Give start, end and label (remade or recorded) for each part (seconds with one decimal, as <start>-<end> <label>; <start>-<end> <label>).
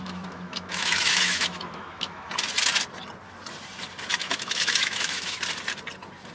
0.0-2.3 remade; 2.3-4.2 recorded; 4.2-5.4 remade; 5.4-6.3 recorded